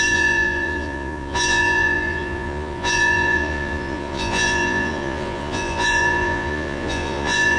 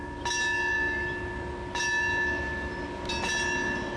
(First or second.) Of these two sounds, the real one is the second